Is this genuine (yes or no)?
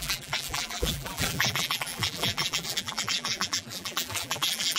no